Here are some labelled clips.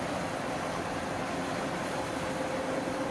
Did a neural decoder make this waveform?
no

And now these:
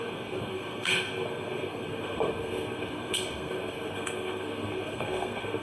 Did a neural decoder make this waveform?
yes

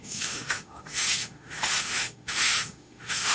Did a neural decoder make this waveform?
yes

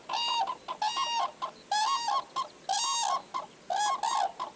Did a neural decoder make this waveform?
no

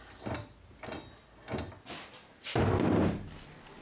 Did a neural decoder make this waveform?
no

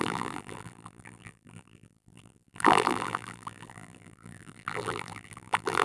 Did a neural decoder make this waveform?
yes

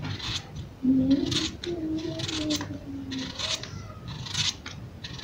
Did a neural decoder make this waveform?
no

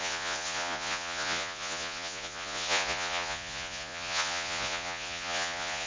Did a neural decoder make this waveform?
yes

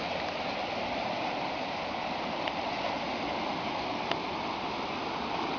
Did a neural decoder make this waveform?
no